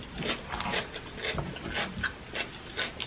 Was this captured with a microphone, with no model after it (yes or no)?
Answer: yes